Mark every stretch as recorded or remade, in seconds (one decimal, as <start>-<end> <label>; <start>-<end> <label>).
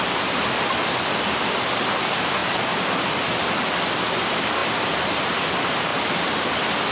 0.0-6.9 recorded